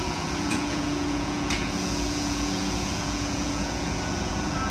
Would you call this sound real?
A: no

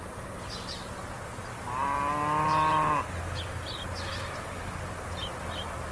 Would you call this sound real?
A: yes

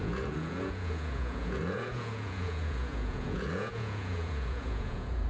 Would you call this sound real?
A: no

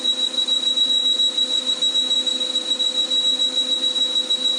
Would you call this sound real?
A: yes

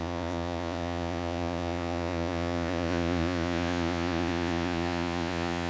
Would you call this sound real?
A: no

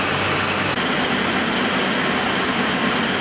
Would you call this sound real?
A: yes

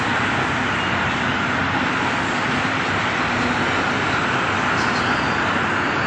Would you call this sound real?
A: yes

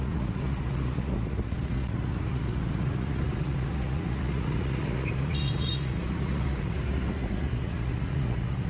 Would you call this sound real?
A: no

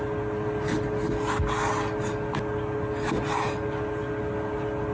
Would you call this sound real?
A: yes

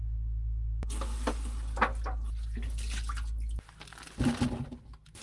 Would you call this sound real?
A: yes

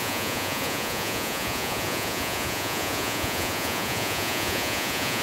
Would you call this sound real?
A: no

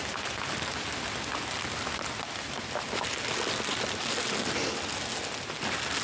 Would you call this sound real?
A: yes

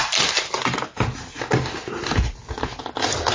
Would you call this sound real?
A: yes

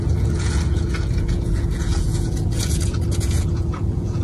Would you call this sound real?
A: no